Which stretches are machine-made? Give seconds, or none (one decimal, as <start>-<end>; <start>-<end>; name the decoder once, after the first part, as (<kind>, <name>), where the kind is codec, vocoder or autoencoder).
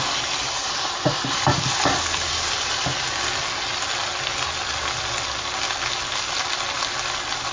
0.6-1.4 (vocoder, BigVGAN v2); 2.3-3.1